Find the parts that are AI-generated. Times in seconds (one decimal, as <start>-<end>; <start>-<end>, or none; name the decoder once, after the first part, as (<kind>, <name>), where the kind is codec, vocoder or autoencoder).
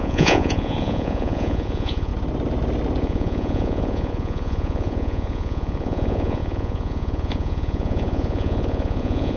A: 0.0-2.1 (vocoder, Vocos); 3.0-9.4